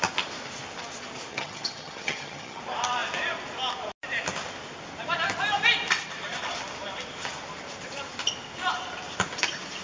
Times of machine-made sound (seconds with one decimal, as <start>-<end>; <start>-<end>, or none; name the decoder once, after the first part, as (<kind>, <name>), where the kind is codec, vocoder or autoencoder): 1.3-2.6 (vocoder, HiFi-GAN)